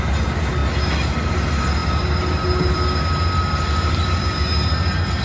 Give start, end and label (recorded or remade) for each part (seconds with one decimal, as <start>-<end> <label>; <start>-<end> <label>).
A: 0.0-5.2 recorded